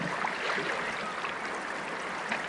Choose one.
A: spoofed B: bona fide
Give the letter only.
B